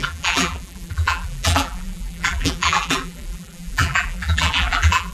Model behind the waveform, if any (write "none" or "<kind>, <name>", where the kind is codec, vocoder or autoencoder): vocoder, BigVGAN v2